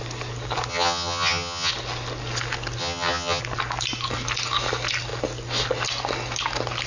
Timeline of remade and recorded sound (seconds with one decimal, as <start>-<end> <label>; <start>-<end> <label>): 0.0-0.7 recorded; 0.7-1.7 remade; 1.7-2.8 recorded; 2.8-3.4 remade; 3.4-6.9 recorded